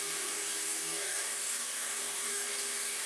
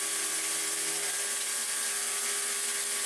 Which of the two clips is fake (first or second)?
first